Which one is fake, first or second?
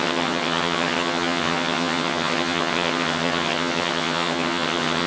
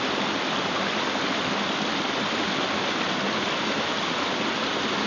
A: first